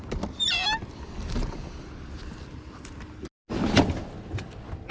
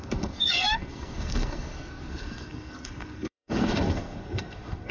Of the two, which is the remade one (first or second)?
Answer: second